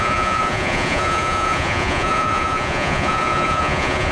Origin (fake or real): fake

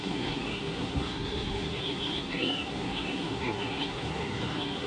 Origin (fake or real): fake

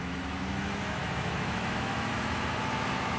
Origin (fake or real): fake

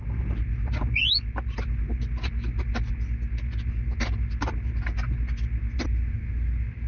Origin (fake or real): real